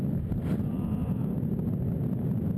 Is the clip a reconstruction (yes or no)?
no